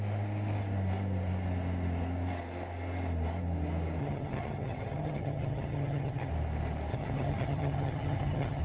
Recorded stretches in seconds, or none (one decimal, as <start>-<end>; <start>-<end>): 0.0-4.0; 6.3-6.9